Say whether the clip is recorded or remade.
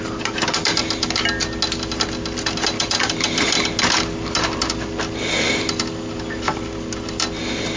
recorded